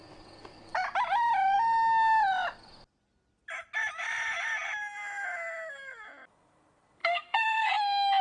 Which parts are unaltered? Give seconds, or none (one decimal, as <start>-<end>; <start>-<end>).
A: 0.0-7.0; 7.7-8.2